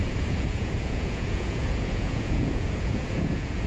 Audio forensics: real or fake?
fake